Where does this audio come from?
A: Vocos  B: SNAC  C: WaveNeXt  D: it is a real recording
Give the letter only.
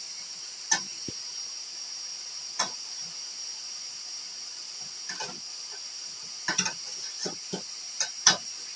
D